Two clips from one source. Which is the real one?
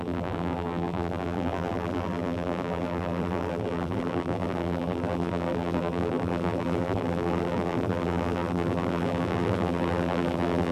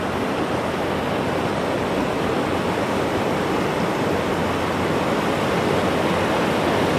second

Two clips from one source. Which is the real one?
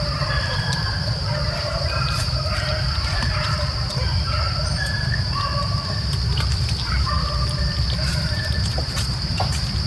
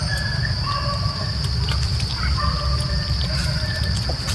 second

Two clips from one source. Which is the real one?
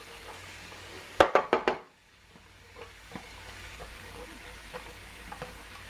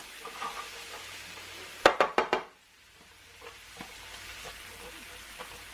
second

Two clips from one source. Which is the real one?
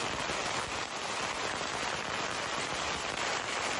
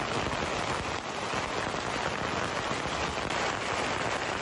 second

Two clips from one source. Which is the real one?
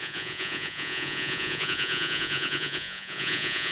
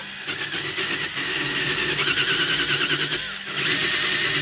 second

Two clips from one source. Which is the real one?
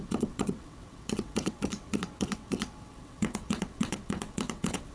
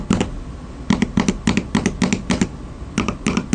second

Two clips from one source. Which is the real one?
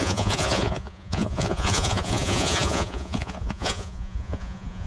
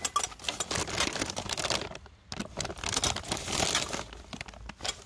second